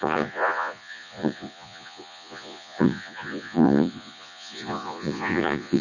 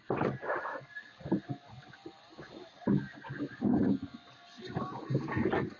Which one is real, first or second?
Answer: second